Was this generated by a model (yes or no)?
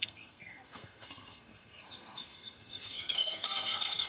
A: yes